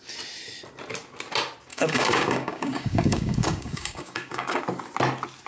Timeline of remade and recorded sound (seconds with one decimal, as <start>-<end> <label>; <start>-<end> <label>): 0.0-1.7 recorded; 1.7-4.6 remade; 4.6-5.5 recorded